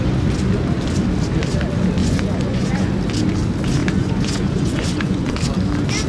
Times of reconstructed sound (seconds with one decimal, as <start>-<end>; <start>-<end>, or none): 2.0-2.9; 3.8-5.3